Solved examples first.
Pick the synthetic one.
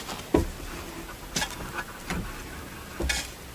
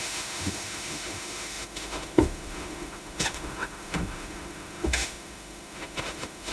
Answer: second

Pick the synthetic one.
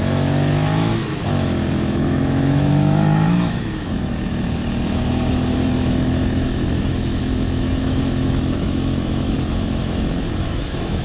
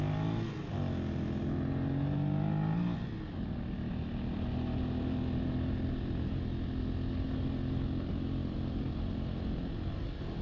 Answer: first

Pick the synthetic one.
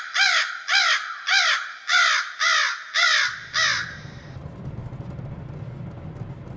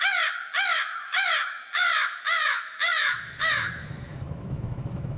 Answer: second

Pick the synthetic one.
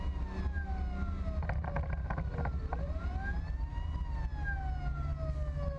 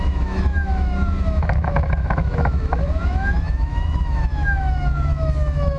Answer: second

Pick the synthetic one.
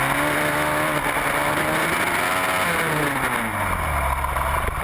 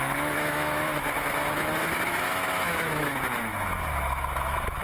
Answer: second